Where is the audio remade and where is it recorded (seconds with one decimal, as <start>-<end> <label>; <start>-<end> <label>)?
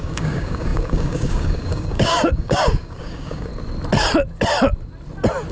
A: 0.0-3.5 remade; 3.5-5.5 recorded